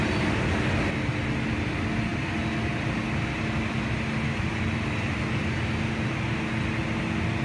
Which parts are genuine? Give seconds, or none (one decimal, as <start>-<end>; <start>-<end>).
0.0-7.4